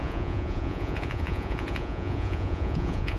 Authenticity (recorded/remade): remade